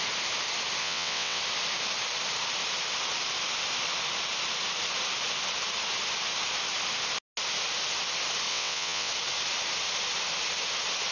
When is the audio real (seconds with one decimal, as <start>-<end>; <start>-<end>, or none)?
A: 0.0-0.8; 1.4-8.5; 9.1-11.1